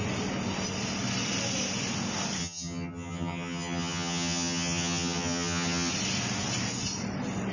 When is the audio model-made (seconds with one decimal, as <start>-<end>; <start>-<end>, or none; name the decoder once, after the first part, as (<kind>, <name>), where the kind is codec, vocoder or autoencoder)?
2.4-5.9 (vocoder, HiFi-GAN)